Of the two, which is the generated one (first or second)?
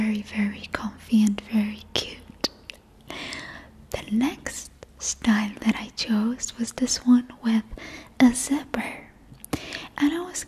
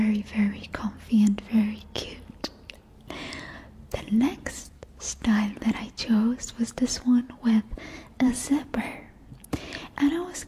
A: second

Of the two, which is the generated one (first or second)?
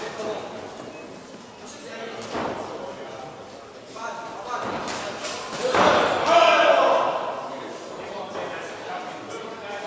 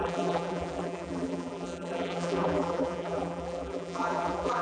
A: second